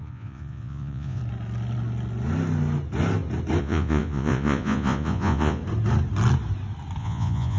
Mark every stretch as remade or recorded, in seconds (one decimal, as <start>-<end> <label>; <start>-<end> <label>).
0.0-1.2 remade; 1.2-3.6 recorded; 3.6-5.6 remade; 5.6-7.0 recorded; 7.0-7.6 remade